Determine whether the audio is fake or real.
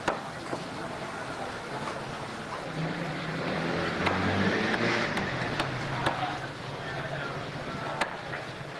real